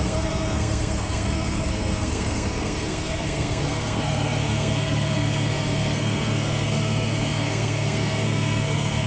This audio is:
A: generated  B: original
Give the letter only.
A